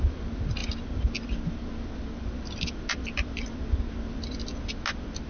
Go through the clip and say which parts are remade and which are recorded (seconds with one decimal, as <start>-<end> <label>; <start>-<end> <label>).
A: 0.0-5.3 recorded